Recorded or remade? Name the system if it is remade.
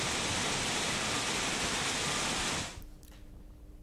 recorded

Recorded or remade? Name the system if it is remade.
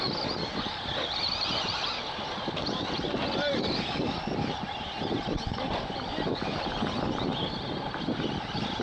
recorded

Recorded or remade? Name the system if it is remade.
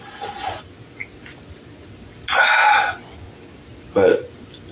recorded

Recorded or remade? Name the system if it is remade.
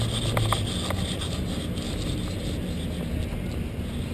recorded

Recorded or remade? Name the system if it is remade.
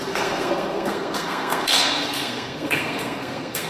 remade, codec, SNAC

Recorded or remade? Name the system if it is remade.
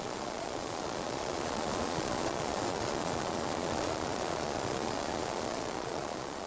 remade, vocoder, Vocos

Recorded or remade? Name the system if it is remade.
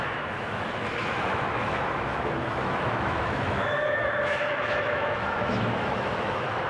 remade, autoencoder, DAC-VAE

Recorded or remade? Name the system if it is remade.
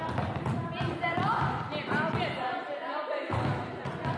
recorded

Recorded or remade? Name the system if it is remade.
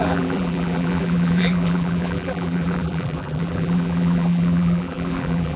remade, vocoder, BigVGAN v2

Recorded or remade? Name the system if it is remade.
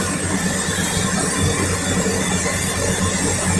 recorded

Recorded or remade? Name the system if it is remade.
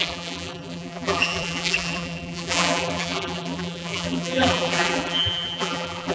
remade, vocoder, BigVGAN v2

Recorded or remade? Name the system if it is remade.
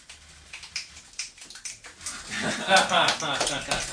recorded